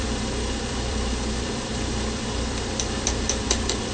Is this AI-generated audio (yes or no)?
yes